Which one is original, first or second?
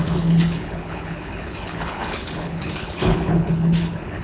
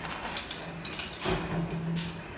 second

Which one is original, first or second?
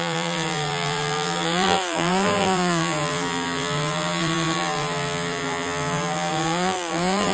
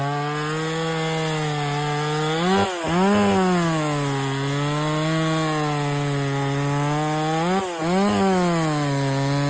second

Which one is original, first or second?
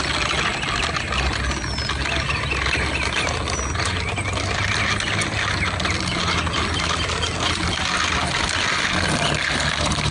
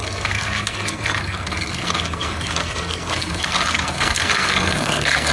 first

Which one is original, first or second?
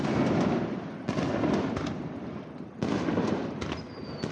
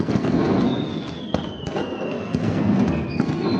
first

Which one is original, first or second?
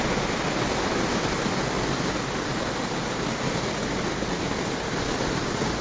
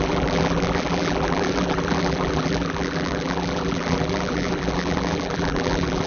first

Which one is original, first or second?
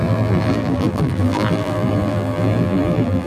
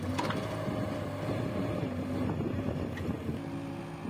second